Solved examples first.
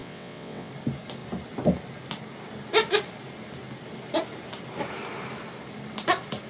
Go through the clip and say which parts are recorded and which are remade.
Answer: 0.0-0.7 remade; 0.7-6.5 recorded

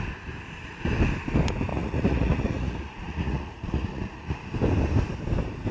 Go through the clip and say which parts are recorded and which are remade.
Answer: 0.0-1.7 recorded; 1.7-4.4 remade; 4.4-5.7 recorded

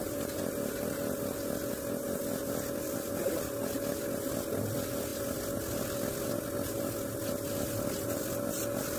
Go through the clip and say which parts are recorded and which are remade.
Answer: 0.0-1.0 remade; 1.0-9.0 recorded

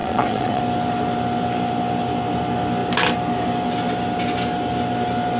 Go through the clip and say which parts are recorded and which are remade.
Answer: 0.0-0.6 remade; 0.6-5.4 recorded

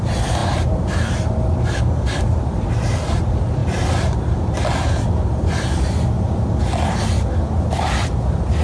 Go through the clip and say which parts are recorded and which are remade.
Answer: 0.0-8.6 recorded